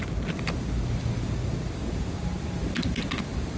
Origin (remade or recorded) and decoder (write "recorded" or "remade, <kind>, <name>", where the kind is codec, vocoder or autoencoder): recorded